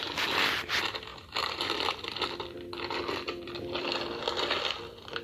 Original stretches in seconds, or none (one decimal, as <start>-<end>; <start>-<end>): 0.0-1.1; 4.2-5.2